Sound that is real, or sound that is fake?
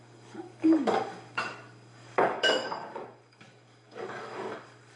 fake